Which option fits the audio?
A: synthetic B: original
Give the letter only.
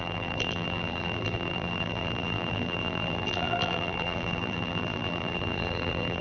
A